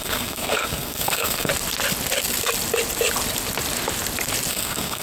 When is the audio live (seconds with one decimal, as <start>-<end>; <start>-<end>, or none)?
1.5-4.5